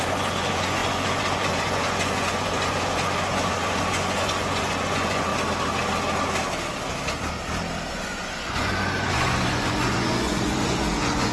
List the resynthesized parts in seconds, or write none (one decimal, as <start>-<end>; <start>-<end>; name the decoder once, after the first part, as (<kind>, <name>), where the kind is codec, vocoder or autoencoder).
0.0-5.3 (vocoder, Vocos); 7.9-11.3